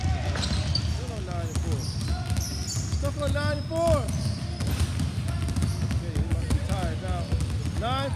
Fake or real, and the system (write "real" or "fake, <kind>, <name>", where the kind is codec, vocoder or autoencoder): real